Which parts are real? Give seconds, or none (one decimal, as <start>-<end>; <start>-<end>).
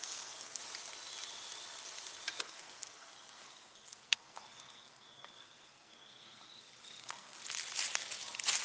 0.6-2.4; 6.5-7.0; 7.4-8.6